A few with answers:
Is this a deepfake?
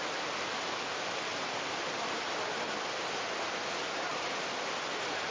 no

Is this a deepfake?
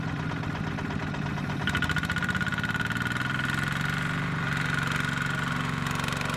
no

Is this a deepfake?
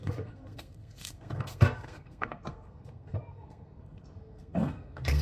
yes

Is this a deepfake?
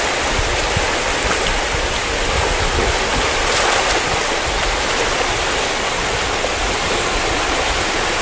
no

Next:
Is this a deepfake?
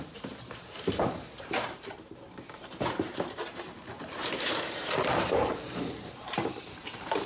yes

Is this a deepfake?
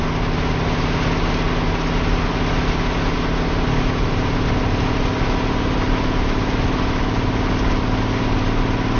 no